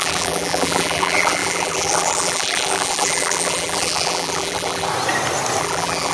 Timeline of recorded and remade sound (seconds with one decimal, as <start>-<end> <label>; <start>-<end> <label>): 0.0-4.9 remade; 4.9-5.6 recorded; 5.6-6.1 remade